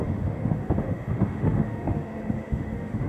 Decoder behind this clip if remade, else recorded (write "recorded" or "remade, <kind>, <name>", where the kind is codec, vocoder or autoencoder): remade, autoencoder, DAC-VAE